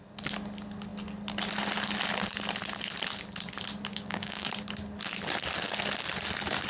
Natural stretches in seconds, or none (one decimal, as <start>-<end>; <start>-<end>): 0.0-3.9; 4.5-6.7